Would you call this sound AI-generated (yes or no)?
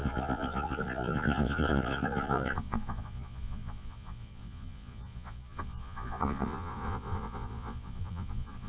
yes